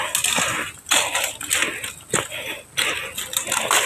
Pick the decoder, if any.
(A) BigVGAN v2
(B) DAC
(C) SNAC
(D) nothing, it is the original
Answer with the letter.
D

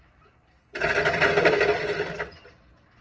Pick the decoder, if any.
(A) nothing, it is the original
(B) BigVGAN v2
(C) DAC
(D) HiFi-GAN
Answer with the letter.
A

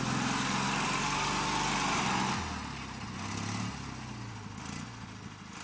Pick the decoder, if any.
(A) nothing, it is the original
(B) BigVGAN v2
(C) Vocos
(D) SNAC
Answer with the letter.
A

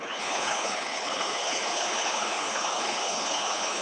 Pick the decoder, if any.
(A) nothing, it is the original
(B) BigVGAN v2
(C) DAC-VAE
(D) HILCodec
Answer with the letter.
D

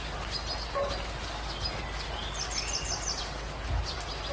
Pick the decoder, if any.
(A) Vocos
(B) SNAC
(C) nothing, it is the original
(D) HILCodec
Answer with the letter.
C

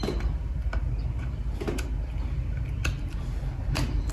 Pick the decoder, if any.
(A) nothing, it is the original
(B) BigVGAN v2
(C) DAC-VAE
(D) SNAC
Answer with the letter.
A